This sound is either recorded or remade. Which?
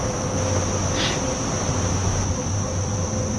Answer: recorded